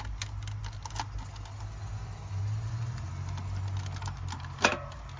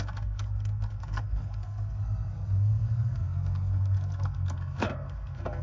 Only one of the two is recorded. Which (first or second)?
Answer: first